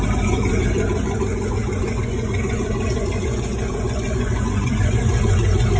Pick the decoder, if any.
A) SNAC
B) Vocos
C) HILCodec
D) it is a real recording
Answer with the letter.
B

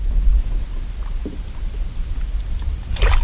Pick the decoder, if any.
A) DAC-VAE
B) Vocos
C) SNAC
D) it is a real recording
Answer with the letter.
D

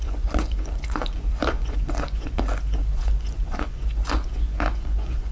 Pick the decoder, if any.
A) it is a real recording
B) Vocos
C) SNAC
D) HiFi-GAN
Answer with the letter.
B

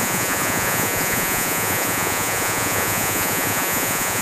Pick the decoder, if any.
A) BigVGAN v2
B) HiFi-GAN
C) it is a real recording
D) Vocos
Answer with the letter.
D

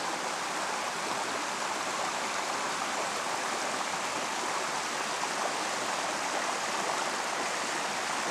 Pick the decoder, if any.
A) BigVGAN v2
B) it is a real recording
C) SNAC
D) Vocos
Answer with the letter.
B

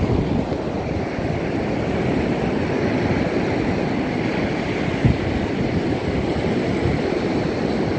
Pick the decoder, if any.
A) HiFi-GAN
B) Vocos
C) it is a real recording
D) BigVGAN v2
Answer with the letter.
C